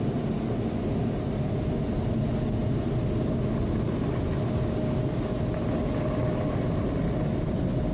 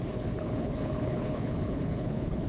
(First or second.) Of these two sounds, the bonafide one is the first